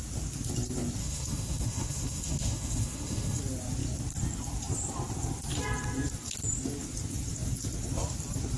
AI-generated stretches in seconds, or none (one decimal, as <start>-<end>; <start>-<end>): 1.0-3.4